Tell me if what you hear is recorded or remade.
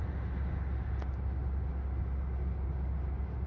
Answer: recorded